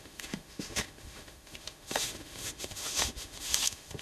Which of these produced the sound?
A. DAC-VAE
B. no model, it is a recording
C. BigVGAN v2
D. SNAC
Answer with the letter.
A